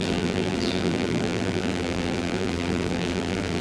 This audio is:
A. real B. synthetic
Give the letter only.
B